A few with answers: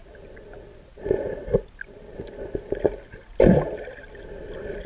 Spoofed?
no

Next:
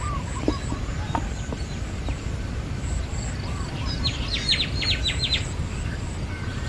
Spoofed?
no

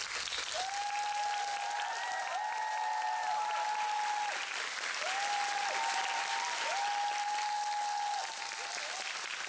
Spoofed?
no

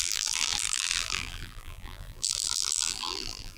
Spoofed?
yes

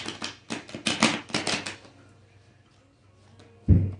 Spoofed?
no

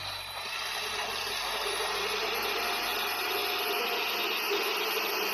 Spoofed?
no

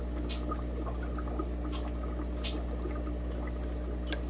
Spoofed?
no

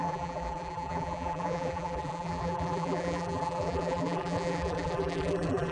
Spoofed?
yes